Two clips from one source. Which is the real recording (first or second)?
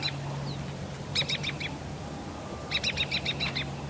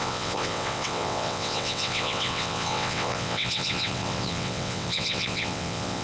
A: first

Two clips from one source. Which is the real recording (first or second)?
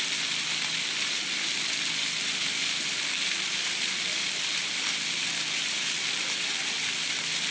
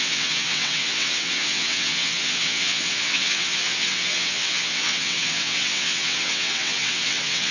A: first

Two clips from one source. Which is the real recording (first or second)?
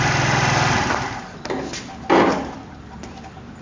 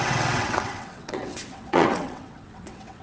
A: first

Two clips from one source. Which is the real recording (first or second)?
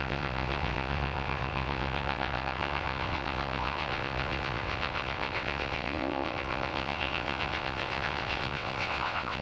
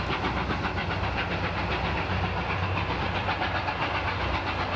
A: second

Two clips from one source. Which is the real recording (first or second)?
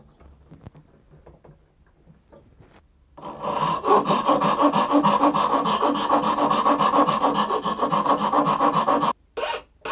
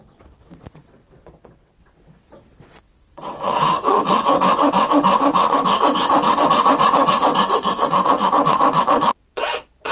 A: first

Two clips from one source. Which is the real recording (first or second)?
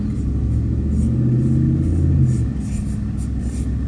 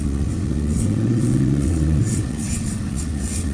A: first